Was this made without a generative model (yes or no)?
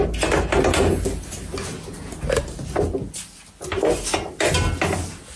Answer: yes